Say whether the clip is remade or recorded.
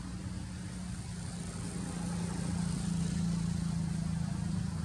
recorded